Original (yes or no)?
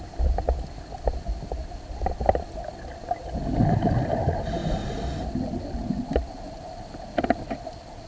yes